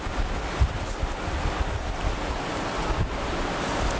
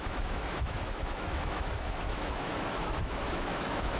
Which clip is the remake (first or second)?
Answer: second